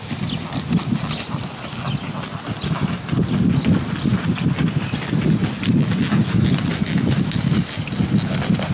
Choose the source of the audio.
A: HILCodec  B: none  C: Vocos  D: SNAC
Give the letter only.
B